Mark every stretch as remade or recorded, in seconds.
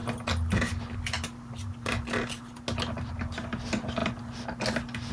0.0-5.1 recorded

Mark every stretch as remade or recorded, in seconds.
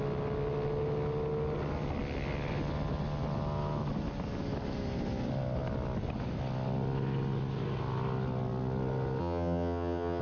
0.0-9.2 recorded; 9.2-10.2 remade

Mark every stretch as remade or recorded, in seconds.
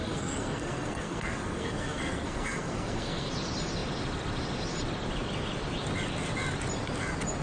0.0-3.3 remade; 3.3-7.4 recorded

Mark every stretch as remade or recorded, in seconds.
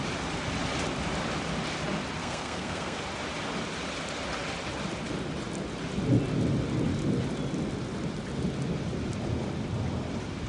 0.0-2.2 recorded; 2.2-3.0 remade; 3.0-10.5 recorded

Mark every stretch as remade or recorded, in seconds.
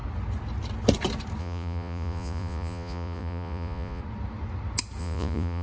0.0-1.4 recorded; 1.4-4.0 remade; 4.0-5.0 recorded; 5.0-5.6 remade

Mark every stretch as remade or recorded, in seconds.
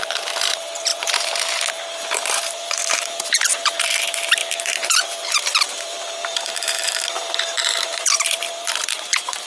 0.0-9.5 remade